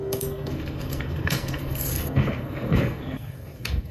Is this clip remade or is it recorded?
remade